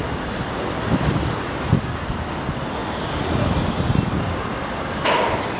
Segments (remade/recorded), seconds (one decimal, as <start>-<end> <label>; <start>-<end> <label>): 0.0-2.8 remade; 2.8-4.1 recorded; 4.1-5.6 remade